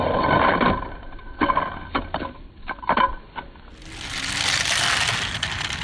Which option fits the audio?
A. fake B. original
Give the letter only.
B